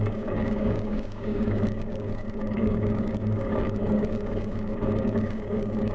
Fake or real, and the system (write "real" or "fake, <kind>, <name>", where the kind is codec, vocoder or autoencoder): fake, codec, DAC